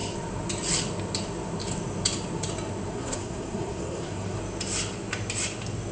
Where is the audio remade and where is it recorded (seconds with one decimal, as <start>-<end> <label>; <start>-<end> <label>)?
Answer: 0.0-2.9 recorded; 2.9-4.4 remade; 4.4-5.9 recorded